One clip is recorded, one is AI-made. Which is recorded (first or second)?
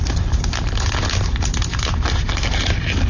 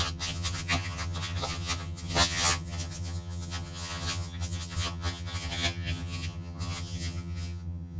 first